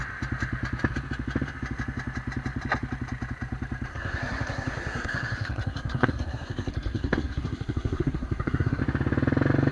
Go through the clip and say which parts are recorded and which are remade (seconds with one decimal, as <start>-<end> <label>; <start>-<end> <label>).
0.0-3.9 recorded; 3.9-8.8 remade; 8.8-9.7 recorded